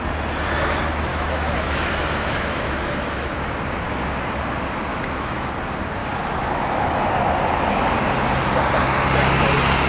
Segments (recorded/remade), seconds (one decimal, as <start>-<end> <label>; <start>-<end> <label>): 0.0-1.1 recorded; 1.1-3.3 remade; 3.3-4.9 recorded; 4.9-5.5 remade; 5.5-6.0 recorded; 6.0-7.1 remade; 7.1-9.9 recorded